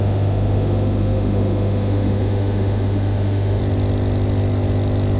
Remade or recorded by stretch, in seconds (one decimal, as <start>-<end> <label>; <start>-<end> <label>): 0.0-3.6 remade; 3.6-5.2 recorded